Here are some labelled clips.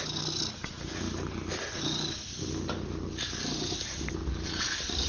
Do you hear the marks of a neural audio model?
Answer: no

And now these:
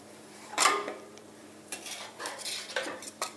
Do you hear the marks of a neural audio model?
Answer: yes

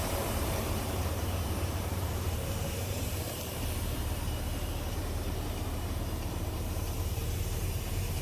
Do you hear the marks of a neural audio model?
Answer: yes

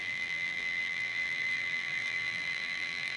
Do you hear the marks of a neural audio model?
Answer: yes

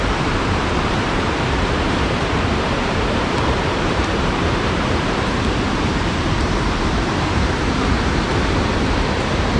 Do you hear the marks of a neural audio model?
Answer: yes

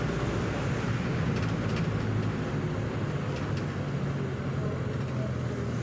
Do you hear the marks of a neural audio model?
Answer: no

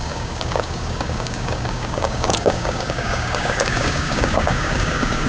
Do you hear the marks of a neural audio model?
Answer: yes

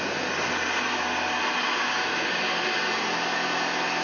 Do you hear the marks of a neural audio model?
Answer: no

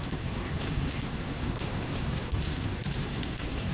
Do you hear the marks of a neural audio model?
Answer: yes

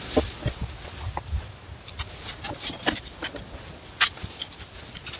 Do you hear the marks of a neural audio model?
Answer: no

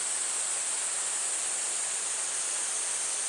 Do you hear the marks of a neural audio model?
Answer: no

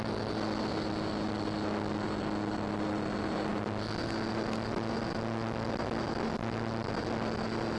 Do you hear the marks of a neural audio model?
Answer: no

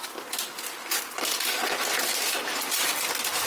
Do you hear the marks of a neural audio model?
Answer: no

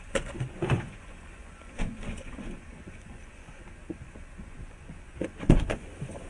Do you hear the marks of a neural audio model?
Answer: yes